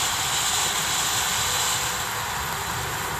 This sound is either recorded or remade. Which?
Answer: recorded